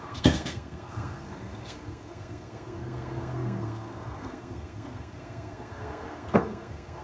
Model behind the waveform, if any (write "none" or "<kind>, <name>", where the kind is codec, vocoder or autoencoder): codec, SNAC